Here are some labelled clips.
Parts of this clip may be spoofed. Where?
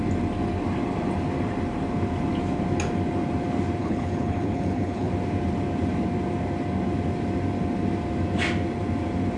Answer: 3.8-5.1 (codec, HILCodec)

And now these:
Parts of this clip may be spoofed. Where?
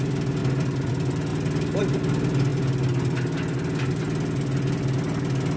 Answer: none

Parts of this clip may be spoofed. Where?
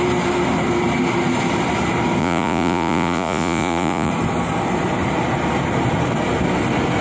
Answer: 2.2-4.1 (vocoder, Vocos)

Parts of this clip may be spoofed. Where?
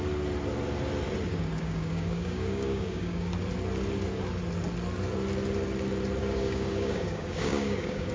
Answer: 1.3-3.3 (codec, DAC); 6.2-8.1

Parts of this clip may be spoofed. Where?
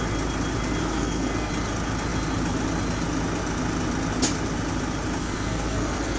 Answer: 0.8-1.5 (codec, SNAC); 5.2-6.2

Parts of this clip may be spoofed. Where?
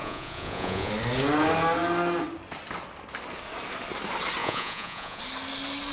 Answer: 0.0-0.9 (vocoder, Vocos); 4.4-5.2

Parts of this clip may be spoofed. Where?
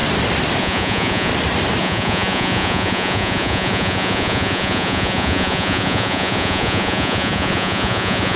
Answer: 0.6-1.3 (vocoder, Vocos); 1.8-8.4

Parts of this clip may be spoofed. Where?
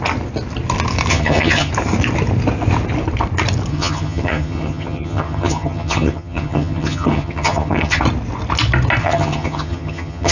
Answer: 1.1-1.7 (vocoder, HiFi-GAN); 3.7-8.0; 9.0-10.3